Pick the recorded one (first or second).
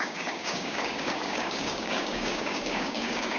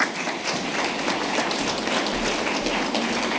second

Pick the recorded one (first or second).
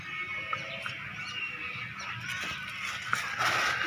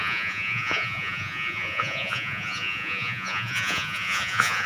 first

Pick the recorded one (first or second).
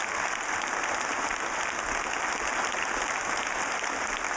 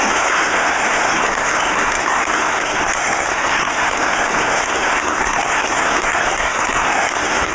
first